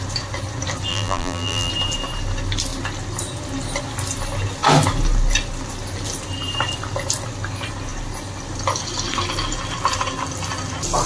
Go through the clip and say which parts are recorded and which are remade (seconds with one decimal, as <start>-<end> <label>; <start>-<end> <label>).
0.0-0.9 recorded; 0.9-1.7 remade; 1.7-11.1 recorded